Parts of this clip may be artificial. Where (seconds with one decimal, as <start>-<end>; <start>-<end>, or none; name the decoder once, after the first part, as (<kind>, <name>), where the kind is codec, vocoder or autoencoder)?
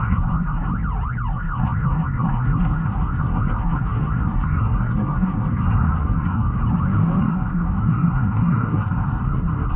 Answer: 0.0-0.7 (codec, SNAC); 1.3-6.6; 7.2-9.8